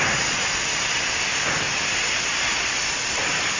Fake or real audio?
real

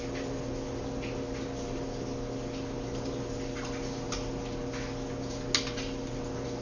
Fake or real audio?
real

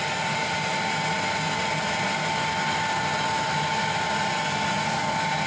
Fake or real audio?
real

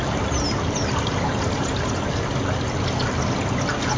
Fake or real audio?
real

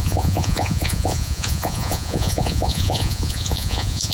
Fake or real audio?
fake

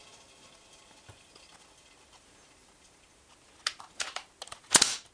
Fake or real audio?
real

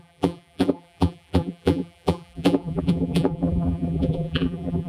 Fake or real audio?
fake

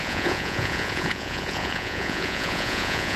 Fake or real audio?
fake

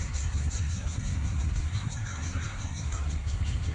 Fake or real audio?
fake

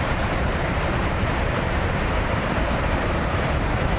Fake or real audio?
fake